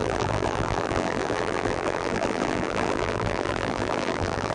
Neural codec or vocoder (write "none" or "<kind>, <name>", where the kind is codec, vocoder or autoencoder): vocoder, BigVGAN v2